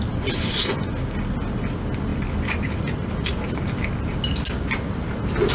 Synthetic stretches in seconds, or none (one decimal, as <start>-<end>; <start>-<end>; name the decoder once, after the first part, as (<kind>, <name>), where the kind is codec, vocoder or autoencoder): none